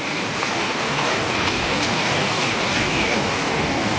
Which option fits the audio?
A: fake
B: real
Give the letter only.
A